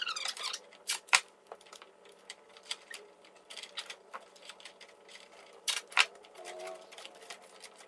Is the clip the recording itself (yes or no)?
no